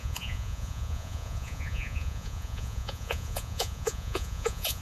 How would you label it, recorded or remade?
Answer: remade